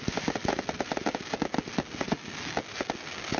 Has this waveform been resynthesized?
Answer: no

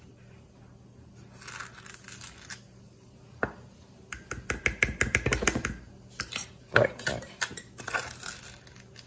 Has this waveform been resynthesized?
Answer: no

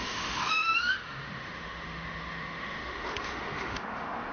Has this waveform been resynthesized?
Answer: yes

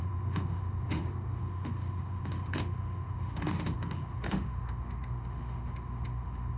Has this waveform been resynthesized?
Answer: yes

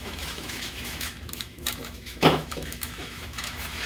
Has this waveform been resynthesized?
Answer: yes